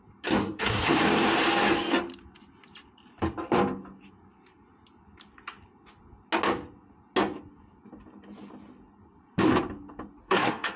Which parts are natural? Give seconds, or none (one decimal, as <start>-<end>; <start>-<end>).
0.0-0.4; 1.0-10.2